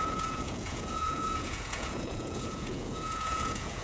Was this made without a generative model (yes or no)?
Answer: no